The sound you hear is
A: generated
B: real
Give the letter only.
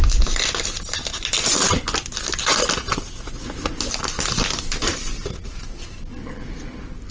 B